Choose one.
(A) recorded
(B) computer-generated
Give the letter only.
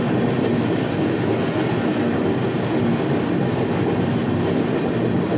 A